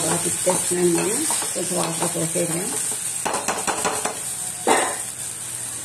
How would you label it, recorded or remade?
recorded